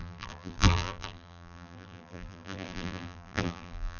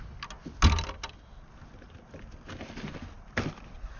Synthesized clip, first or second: first